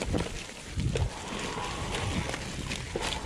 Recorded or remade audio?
recorded